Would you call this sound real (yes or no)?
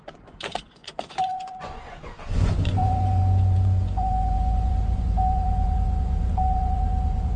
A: no